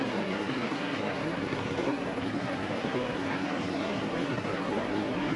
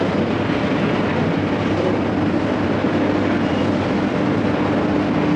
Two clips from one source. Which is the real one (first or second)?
second